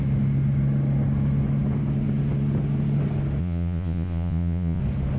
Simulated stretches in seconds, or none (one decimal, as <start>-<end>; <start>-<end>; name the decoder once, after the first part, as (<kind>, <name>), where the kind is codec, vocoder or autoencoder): 3.4-4.8 (vocoder, Vocos)